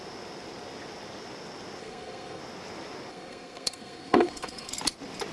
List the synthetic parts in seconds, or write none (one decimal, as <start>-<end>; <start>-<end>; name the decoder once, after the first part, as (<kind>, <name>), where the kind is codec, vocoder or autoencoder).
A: 1.8-2.4 (codec, SNAC); 3.1-4.7